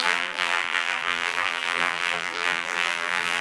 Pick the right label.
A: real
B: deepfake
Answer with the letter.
B